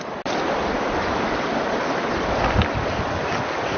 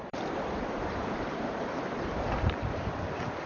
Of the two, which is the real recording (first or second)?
first